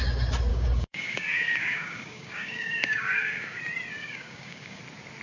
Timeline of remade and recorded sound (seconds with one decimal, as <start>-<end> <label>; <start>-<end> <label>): 0.0-0.5 recorded; 0.5-3.6 remade; 3.6-4.0 recorded; 4.0-4.8 remade; 4.8-5.2 recorded